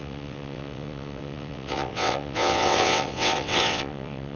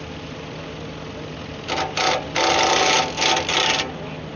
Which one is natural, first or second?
second